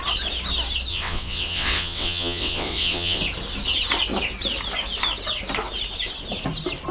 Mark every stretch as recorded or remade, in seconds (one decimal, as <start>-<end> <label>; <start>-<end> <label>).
0.0-0.9 recorded; 0.9-3.2 remade; 3.2-6.9 recorded